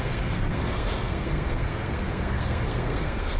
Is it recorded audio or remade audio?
remade